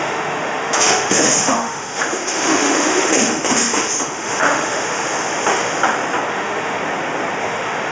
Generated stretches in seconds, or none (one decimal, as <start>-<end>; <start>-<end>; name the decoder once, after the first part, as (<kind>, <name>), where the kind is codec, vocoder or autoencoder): 0.0-5.8 (autoencoder, DAC-VAE); 6.3-6.8; 7.4-7.9

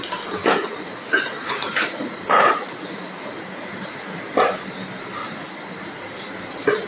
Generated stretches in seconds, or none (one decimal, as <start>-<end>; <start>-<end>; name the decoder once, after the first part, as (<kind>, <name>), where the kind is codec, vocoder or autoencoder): 0.4-4.4 (vocoder, Vocos); 5.2-5.8

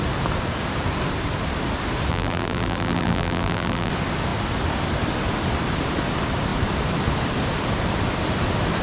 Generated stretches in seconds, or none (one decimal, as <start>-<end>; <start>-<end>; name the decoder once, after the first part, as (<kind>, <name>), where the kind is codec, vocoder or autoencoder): 2.1-3.9 (vocoder, BigVGAN v2)

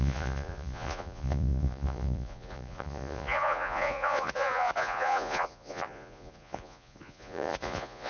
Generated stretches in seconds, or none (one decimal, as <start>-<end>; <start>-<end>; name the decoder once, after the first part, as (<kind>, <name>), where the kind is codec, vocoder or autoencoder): 0.0-8.1 (vocoder, Vocos)

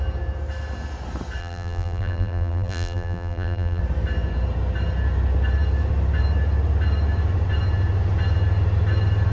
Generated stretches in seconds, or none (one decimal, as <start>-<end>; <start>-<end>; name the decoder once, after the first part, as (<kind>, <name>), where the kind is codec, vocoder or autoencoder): 1.4-3.8 (vocoder, BigVGAN v2)

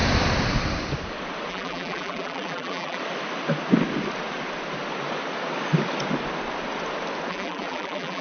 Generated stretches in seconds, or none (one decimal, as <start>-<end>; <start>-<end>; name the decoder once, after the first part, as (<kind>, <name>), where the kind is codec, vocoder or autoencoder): 1.5-3.0 (vocoder, BigVGAN v2); 7.3-8.2